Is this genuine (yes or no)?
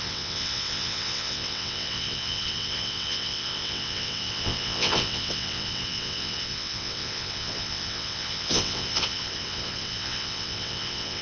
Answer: no